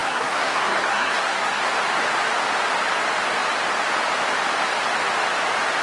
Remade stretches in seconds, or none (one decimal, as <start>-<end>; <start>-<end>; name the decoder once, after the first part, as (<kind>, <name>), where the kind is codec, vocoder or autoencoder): 0.0-1.6 (codec, SNAC)